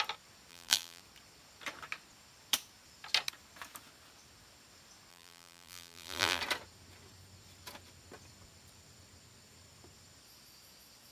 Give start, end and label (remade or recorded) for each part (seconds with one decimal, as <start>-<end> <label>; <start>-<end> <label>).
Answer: 0.0-0.5 recorded; 0.5-1.0 remade; 1.0-5.1 recorded; 5.1-6.4 remade; 6.4-11.1 recorded